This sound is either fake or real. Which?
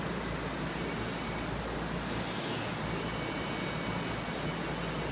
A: real